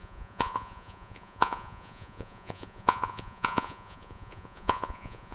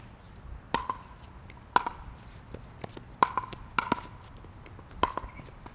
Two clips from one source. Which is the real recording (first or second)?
second